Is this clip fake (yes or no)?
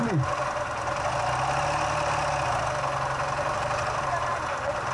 no